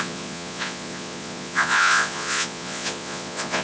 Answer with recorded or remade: remade